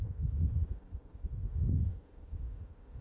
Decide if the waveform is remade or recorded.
remade